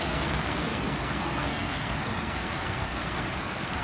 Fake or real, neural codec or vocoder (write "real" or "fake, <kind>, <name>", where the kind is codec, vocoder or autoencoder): fake, codec, SNAC